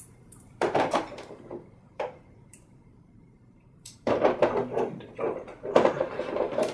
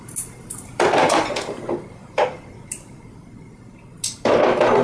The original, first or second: second